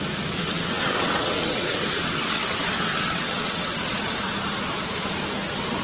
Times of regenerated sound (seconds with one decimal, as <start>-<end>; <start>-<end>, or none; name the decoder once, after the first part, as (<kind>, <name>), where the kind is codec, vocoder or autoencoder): 0.4-3.9 (vocoder, WaveNeXt)